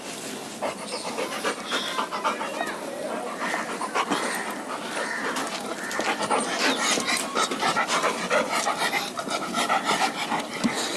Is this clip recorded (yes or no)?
yes